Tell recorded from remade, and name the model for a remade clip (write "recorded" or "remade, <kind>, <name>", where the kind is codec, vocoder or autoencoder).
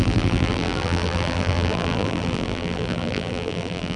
remade, vocoder, BigVGAN v2